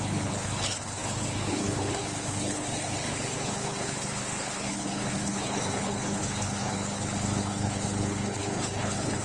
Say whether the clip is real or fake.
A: fake